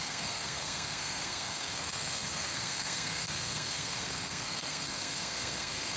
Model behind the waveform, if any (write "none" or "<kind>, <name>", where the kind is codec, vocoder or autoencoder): codec, SNAC